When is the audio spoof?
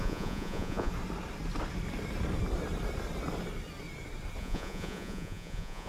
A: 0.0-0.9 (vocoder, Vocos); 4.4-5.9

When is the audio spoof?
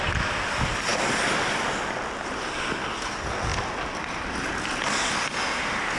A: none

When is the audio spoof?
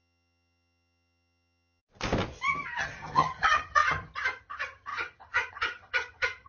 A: 0.0-1.8 (vocoder, HiFi-GAN); 2.8-6.5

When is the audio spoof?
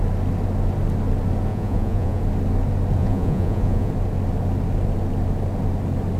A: 1.5-2.2 (vocoder, Vocos); 3.0-3.9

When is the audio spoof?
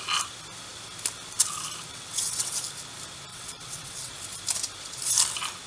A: 1.9-2.6 (vocoder, WaveNeXt); 3.3-4.1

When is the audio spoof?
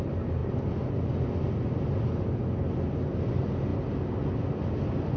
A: none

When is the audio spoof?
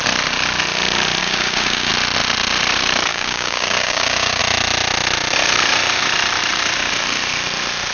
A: 1.2-1.9 (codec, DAC); 3.1-4.4